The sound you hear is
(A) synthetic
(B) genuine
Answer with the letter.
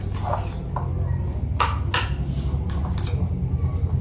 B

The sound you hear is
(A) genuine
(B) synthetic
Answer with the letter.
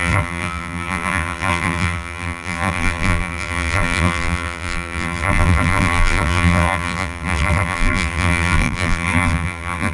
B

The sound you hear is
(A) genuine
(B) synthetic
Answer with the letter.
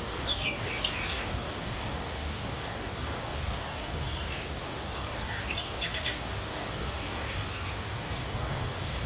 B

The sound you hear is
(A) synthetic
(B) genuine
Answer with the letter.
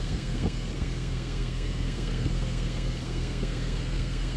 A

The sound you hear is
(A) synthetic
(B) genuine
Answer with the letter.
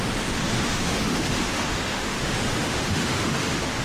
A